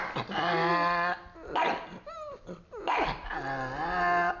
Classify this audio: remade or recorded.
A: recorded